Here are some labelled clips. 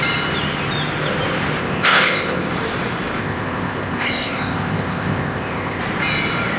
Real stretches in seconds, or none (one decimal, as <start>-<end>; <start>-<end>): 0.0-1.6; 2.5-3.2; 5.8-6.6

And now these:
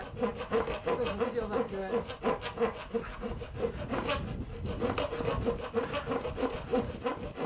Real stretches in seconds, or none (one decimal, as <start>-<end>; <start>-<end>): 0.0-7.5

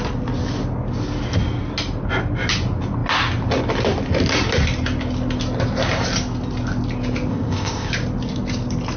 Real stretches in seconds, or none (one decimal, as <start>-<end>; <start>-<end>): 0.0-7.3; 7.9-9.0

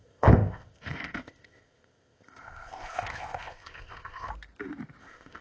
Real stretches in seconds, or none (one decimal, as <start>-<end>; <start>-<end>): 4.3-5.0

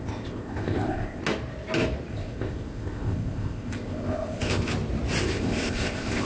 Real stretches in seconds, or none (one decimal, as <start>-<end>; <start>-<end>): 1.2-2.1; 4.7-5.2

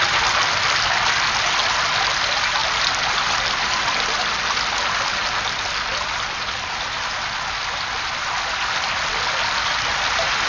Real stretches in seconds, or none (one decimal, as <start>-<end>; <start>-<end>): 0.0-10.5

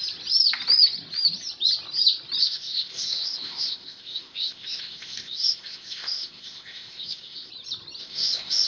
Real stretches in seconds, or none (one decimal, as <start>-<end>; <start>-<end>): 0.0-2.4; 7.5-8.0